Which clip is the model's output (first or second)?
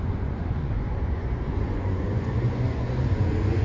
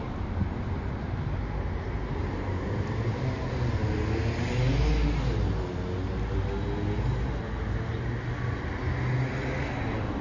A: first